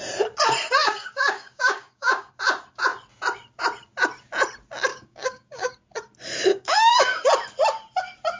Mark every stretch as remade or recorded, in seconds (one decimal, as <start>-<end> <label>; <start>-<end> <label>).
0.0-0.8 recorded; 0.8-2.3 remade; 2.3-4.9 recorded; 4.9-5.7 remade; 5.7-6.5 recorded; 6.5-7.3 remade; 7.3-8.4 recorded